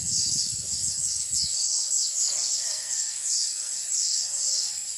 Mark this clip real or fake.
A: fake